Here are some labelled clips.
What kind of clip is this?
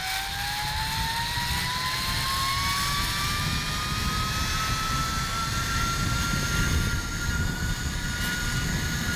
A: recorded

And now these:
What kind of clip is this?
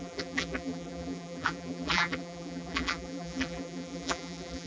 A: remade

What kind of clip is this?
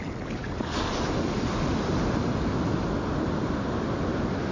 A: recorded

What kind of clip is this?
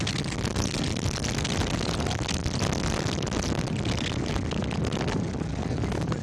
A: recorded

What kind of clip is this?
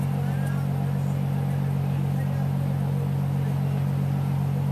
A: recorded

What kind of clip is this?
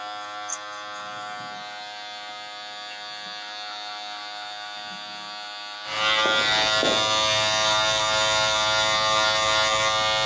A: recorded